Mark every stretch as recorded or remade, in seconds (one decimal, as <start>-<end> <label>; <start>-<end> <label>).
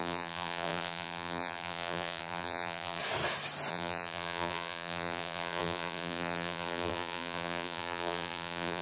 0.0-3.0 remade; 3.0-3.7 recorded; 3.7-8.8 remade